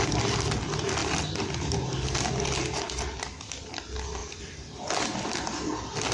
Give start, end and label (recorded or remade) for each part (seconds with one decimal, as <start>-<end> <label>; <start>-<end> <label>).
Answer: 0.0-4.2 recorded; 4.2-5.3 remade; 5.3-6.1 recorded